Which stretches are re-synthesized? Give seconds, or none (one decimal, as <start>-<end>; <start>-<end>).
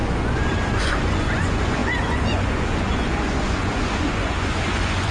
0.0-5.1